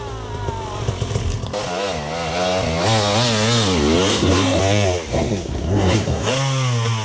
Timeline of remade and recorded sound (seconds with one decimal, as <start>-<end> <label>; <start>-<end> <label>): 0.0-4.1 recorded; 4.1-4.6 remade; 4.6-5.1 recorded; 5.1-6.3 remade; 6.3-7.0 recorded